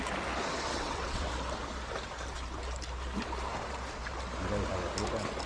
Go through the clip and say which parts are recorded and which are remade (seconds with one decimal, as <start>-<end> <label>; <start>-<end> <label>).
0.0-0.7 recorded; 0.7-1.3 remade; 1.3-5.5 recorded

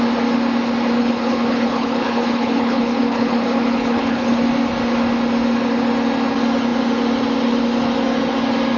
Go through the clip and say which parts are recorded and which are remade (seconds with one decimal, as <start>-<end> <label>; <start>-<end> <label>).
0.0-1.0 recorded; 1.0-4.4 remade; 4.4-8.8 recorded

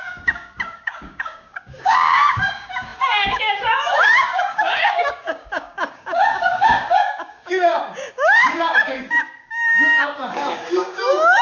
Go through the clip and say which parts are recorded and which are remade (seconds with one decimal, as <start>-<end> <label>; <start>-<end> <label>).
0.0-11.4 remade

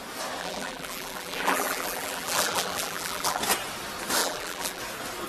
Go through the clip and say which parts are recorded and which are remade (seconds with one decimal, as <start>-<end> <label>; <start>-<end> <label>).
0.0-0.4 recorded; 0.4-3.4 remade; 3.4-4.2 recorded; 4.2-4.8 remade; 4.8-5.3 recorded

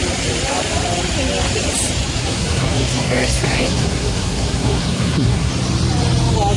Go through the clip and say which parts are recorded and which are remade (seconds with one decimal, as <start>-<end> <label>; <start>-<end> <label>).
0.0-2.2 recorded; 2.2-5.5 remade; 5.5-6.6 recorded

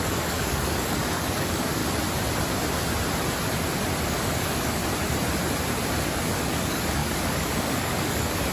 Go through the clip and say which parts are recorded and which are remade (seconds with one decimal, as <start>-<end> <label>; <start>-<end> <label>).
0.0-1.8 remade; 1.8-4.0 recorded; 4.0-4.8 remade; 4.8-6.0 recorded; 6.0-8.5 remade

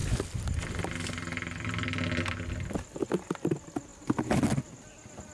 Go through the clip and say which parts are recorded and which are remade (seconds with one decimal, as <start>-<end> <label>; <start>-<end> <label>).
0.0-5.3 recorded